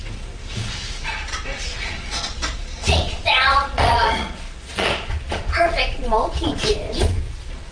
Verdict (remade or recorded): remade